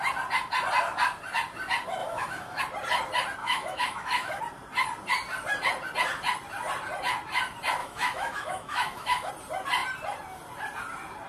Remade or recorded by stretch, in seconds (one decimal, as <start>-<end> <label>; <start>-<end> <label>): 0.0-2.0 recorded; 2.0-2.6 remade; 2.6-3.4 recorded; 3.4-4.4 remade; 4.4-7.8 recorded; 7.8-9.3 remade; 9.3-11.3 recorded